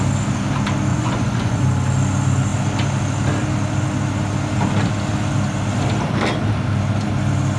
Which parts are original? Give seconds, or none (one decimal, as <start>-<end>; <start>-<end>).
0.0-0.9; 1.6-7.6